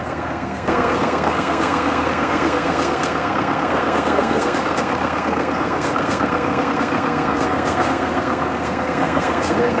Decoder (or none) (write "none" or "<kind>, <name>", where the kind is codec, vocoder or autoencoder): codec, SNAC